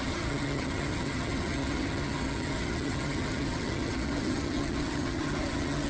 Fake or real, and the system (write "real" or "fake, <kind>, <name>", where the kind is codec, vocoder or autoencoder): fake, vocoder, HiFi-GAN